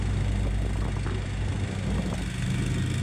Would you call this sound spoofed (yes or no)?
no